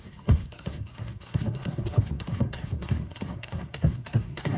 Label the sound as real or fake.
fake